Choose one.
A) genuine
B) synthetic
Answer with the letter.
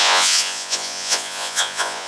B